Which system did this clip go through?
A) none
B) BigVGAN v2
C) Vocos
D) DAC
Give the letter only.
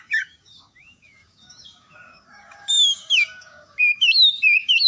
D